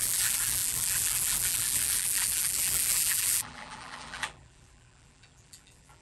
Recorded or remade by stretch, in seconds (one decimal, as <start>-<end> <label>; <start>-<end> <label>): 0.0-6.0 remade